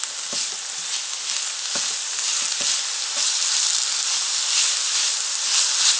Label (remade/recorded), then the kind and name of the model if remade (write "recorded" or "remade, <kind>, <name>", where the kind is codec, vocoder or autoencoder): recorded